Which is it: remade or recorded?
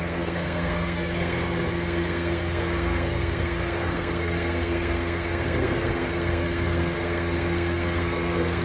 remade